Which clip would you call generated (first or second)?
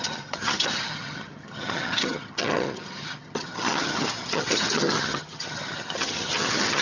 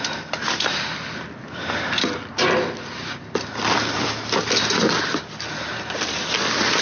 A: first